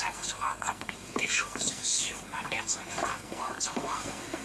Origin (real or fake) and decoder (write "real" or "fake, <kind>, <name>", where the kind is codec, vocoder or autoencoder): fake, codec, SNAC